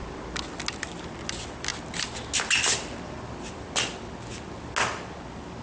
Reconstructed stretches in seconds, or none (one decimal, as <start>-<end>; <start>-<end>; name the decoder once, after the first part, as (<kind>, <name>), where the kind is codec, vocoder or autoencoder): none